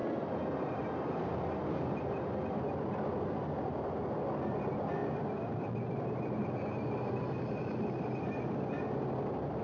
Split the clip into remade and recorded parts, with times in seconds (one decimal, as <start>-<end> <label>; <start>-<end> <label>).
0.0-9.6 recorded